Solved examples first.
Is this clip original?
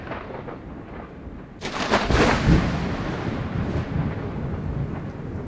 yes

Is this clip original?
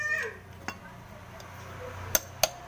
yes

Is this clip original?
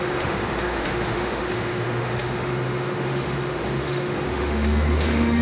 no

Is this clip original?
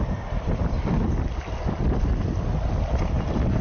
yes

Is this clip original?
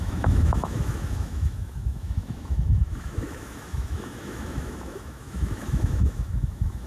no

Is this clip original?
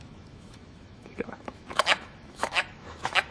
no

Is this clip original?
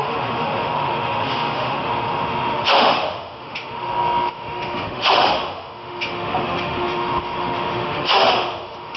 no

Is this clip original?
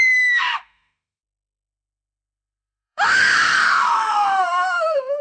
no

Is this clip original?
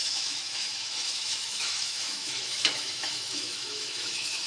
no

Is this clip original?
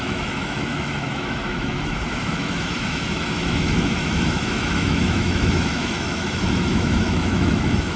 no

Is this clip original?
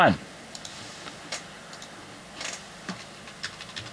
yes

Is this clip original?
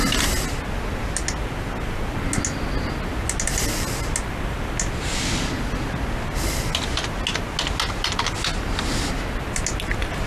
yes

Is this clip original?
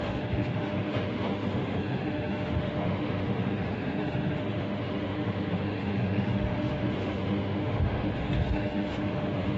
no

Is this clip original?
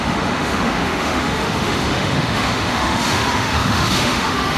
no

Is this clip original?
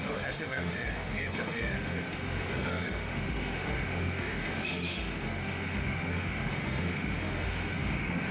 no